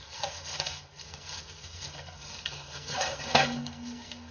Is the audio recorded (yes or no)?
no